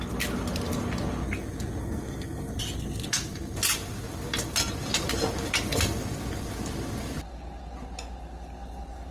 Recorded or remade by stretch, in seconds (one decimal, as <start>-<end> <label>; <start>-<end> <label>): 0.0-1.8 recorded; 1.8-2.5 remade; 2.5-9.1 recorded